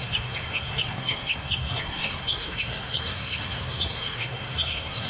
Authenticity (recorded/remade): remade